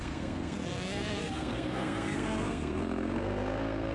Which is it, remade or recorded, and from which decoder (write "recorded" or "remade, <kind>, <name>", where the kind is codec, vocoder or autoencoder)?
remade, codec, SNAC